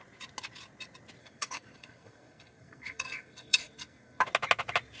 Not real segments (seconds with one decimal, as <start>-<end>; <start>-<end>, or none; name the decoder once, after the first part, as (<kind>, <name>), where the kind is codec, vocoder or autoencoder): 1.2-4.2 (codec, SNAC)